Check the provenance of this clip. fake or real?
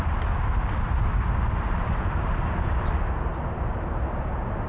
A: real